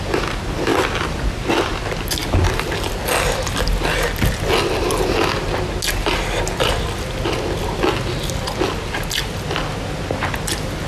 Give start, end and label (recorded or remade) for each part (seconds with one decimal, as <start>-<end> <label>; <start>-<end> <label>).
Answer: 0.0-10.9 recorded

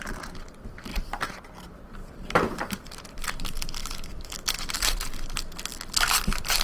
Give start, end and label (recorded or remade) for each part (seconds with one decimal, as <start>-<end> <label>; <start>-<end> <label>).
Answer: 0.0-0.9 recorded; 0.9-1.4 remade; 1.4-2.0 recorded; 2.0-2.9 remade; 2.9-3.8 recorded; 3.8-5.6 remade; 5.6-6.6 recorded

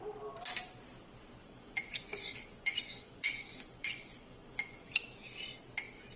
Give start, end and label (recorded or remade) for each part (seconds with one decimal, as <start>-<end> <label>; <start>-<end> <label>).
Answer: 0.0-1.4 recorded; 1.4-4.9 remade; 4.9-6.2 recorded

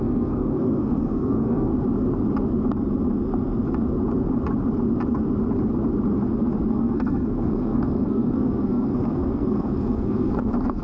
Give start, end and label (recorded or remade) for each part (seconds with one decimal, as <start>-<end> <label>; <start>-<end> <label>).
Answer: 0.0-1.7 remade; 1.7-6.7 recorded; 6.7-10.8 remade

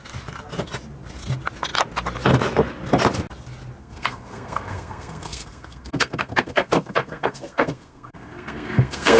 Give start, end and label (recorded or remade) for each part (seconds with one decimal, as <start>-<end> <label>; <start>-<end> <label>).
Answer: 0.0-3.8 recorded; 3.8-9.2 remade